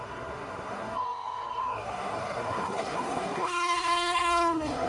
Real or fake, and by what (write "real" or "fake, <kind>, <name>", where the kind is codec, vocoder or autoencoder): fake, codec, SNAC